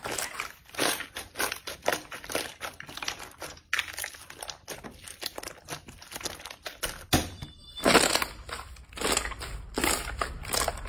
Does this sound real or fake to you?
real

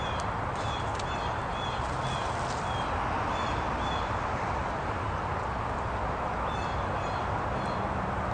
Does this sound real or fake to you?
real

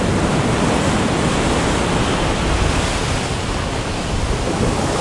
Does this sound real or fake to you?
real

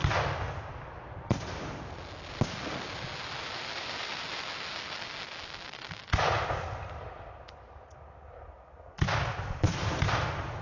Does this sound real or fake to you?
real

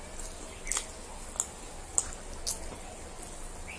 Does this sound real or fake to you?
real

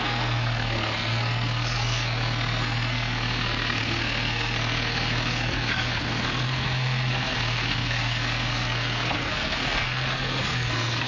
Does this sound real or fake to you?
fake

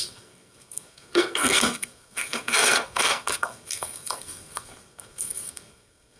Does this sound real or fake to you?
fake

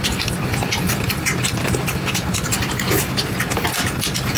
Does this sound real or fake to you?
real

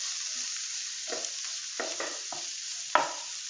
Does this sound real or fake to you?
real